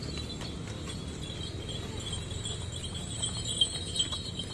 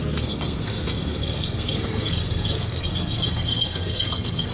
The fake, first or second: second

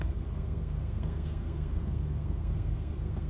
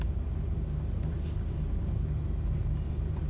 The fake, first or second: first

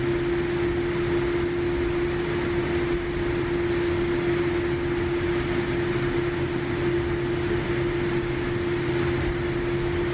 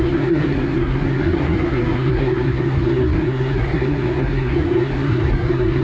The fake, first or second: second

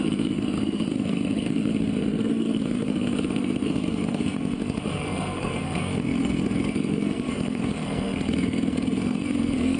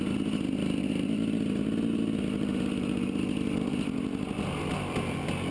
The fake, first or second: first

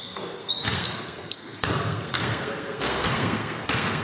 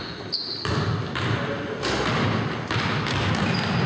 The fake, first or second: first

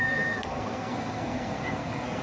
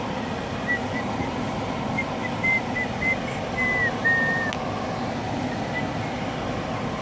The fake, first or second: first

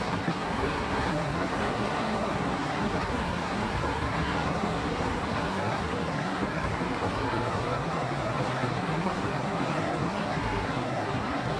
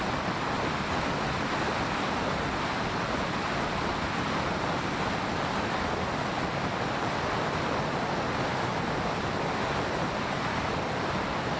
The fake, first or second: first